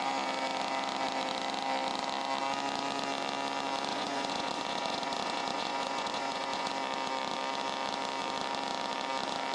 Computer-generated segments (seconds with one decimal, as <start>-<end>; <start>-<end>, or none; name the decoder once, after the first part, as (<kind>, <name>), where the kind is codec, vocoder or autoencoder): 3.9-6.7 (vocoder, Vocos)